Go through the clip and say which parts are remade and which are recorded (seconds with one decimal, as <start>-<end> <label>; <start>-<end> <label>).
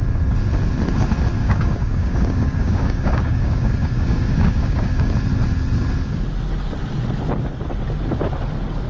0.0-1.4 recorded; 1.4-5.1 remade; 5.1-8.9 recorded